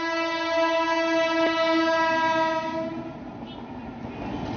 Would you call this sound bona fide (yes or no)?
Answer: yes